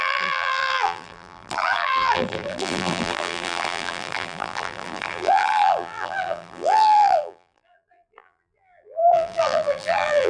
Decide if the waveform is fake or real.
fake